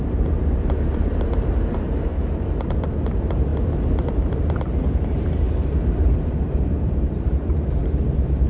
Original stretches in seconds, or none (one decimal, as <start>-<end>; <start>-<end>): 2.1-2.9